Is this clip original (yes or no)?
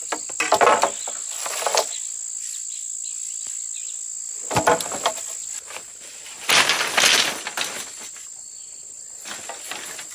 yes